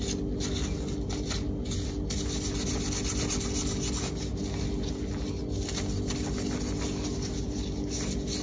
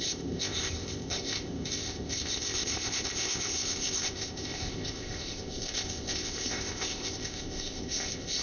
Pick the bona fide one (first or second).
first